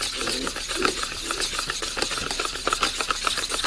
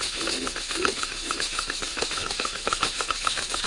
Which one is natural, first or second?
first